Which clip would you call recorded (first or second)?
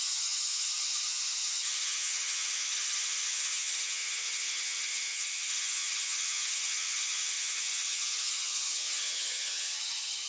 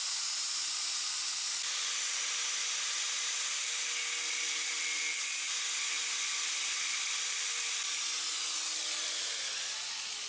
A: second